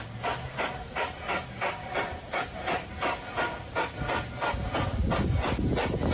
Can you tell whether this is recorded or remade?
recorded